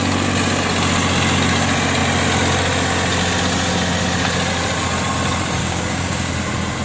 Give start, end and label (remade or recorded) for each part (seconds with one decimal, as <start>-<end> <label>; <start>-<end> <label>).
0.0-5.6 recorded; 5.6-6.3 remade; 6.3-6.8 recorded